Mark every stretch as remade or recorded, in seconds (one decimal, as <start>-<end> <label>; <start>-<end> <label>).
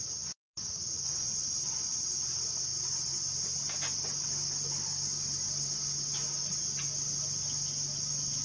0.0-8.4 recorded